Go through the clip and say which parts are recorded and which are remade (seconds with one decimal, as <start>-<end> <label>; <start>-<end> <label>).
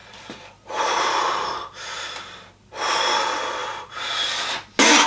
0.0-2.5 remade; 2.5-3.6 recorded; 3.6-4.2 remade; 4.2-5.1 recorded